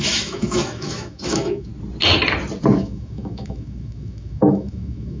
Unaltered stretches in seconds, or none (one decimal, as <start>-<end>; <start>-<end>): 1.7-2.8